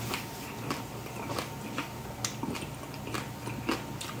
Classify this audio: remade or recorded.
recorded